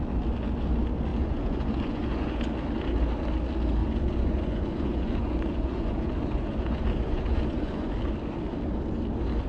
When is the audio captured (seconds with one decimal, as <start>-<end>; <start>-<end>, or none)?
0.0-1.1; 2.3-3.8; 7.9-9.5